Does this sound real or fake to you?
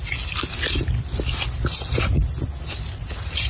real